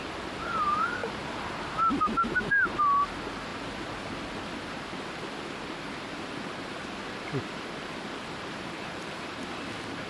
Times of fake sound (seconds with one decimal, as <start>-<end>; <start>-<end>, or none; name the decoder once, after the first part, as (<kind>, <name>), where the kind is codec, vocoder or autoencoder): 0.0-1.0 (vocoder, BigVGAN v2); 2.6-3.5; 6.2-10.1